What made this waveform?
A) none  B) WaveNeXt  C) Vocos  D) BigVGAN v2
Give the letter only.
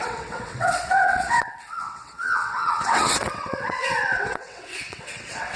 B